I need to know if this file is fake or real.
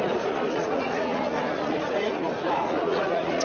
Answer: fake